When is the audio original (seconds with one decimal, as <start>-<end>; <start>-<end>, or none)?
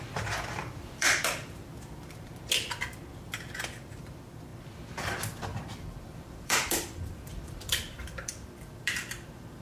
2.3-2.9